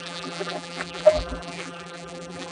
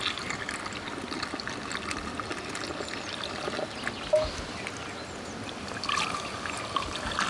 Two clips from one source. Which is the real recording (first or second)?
second